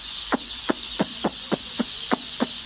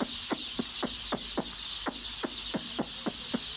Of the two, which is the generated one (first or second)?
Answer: first